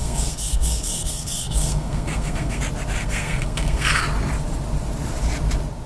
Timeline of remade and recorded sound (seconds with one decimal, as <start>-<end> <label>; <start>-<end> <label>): 0.0-2.6 remade; 2.6-3.0 recorded; 3.0-4.0 remade; 4.0-5.9 recorded